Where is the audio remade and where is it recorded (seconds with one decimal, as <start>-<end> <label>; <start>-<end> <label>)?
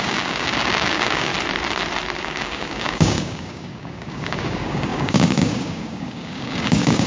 0.0-1.3 remade; 1.3-2.2 recorded; 2.2-7.1 remade